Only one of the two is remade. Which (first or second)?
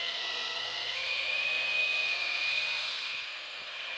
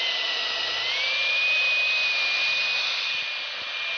first